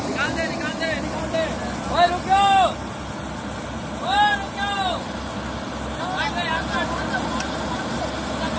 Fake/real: real